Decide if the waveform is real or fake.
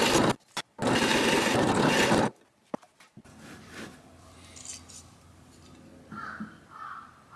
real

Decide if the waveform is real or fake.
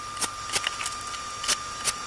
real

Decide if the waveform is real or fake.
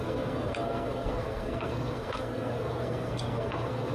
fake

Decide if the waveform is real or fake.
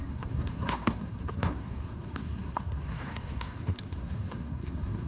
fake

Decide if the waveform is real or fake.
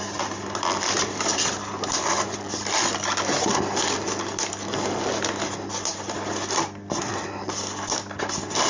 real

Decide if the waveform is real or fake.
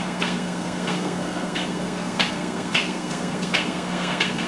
fake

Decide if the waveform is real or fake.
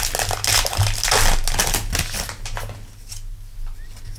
real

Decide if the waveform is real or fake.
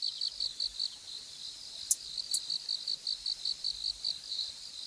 real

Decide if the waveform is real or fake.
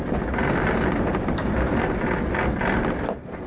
real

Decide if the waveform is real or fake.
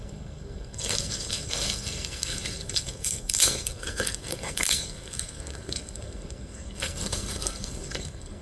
fake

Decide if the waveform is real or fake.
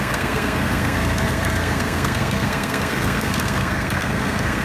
fake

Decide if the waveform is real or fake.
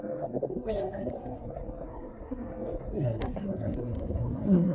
fake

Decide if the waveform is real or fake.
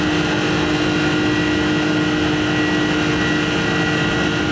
real